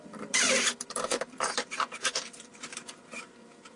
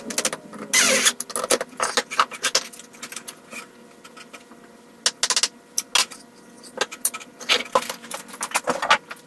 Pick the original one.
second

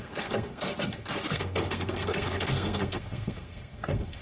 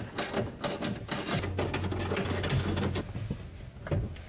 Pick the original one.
second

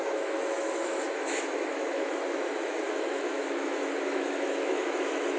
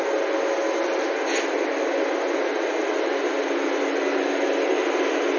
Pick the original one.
second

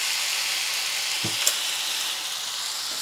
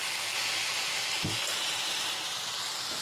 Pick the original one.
first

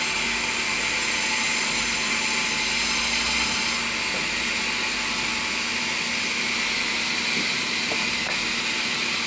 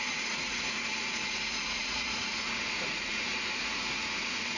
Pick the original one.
first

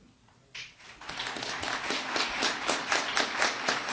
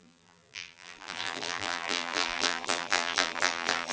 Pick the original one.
first